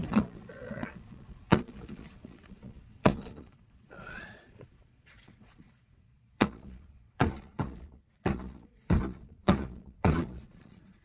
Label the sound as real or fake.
fake